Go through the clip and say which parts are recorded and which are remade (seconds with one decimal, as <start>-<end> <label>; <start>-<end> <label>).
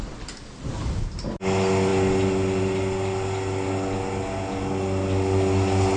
0.0-6.0 recorded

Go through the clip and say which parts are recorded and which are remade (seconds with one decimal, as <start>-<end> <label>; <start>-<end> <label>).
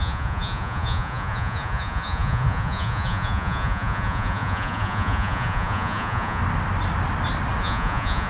0.0-6.4 remade; 6.4-7.6 recorded; 7.6-8.3 remade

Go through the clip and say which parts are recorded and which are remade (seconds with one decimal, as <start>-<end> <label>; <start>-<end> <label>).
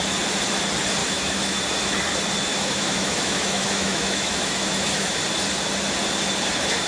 0.0-1.0 recorded; 1.0-1.6 remade; 1.6-2.5 recorded; 2.5-5.2 remade; 5.2-6.9 recorded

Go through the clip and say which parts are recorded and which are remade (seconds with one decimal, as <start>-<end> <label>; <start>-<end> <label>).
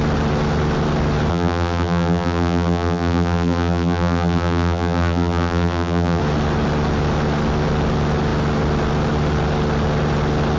0.0-1.3 recorded; 1.3-6.2 remade; 6.2-10.6 recorded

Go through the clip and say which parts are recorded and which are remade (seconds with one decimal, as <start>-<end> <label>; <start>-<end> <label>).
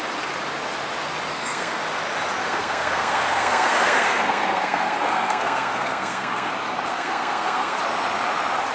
0.0-1.3 recorded; 1.3-1.8 remade; 1.8-2.4 recorded; 2.4-6.5 remade; 6.5-6.9 recorded; 6.9-7.8 remade; 7.8-8.7 recorded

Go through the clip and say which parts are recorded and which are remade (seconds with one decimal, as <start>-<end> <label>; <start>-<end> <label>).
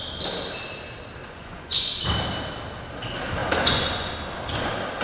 0.0-1.2 recorded; 1.2-1.9 remade; 1.9-3.4 recorded; 3.4-4.1 remade; 4.1-5.0 recorded